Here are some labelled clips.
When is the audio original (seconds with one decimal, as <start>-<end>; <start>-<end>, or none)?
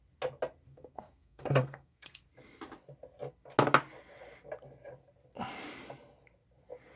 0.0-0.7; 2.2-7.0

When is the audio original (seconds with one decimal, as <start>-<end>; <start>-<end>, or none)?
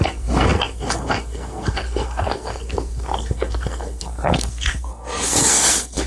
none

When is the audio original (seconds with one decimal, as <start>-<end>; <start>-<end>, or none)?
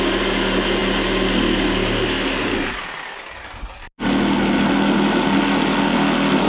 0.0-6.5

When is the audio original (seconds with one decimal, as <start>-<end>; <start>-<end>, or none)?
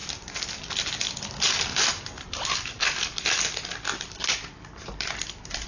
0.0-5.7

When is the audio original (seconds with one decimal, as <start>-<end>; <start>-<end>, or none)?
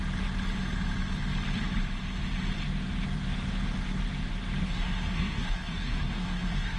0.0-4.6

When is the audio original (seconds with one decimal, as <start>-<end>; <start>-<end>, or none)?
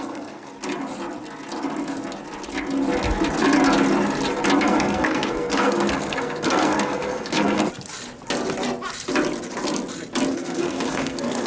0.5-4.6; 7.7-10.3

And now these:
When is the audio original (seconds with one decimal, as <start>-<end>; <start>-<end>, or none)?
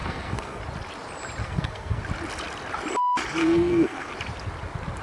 0.6-1.4; 2.0-3.4; 4.1-5.0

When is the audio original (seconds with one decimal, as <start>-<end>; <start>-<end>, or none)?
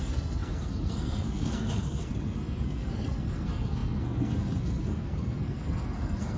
none